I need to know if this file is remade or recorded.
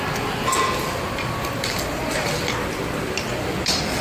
recorded